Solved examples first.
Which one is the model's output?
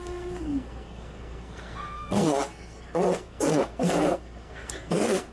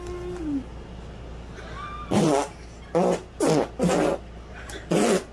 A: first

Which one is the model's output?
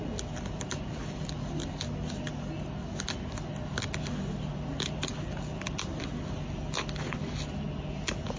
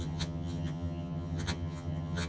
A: second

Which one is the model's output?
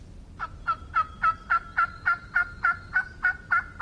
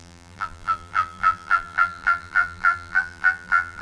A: second